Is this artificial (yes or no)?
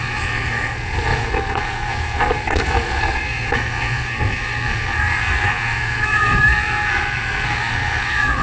yes